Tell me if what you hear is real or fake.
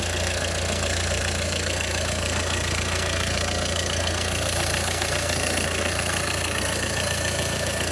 fake